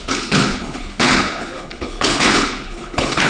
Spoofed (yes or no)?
yes